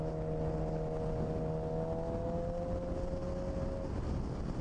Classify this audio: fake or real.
real